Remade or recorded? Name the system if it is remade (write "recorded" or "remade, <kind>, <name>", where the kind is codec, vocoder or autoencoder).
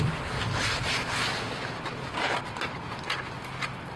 recorded